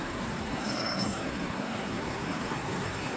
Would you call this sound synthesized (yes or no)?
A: yes